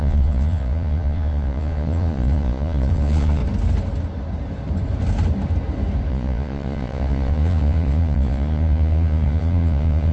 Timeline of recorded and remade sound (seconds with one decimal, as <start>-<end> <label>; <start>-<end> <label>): 0.0-3.4 remade; 3.4-6.1 recorded; 6.1-10.1 remade

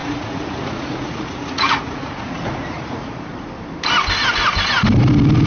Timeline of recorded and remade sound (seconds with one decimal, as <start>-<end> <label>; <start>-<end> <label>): 0.0-3.3 remade; 3.3-5.5 recorded